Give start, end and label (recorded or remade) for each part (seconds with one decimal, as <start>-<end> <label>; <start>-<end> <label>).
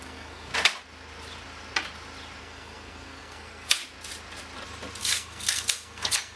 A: 0.0-0.5 remade; 0.5-2.4 recorded; 2.4-3.8 remade; 3.8-5.0 recorded; 5.0-6.4 remade